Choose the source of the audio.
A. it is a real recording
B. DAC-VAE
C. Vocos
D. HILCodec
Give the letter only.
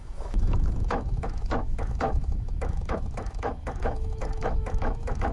B